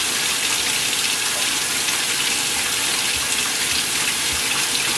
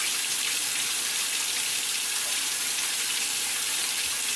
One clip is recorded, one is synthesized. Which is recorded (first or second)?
first